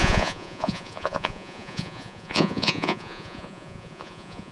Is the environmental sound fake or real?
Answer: fake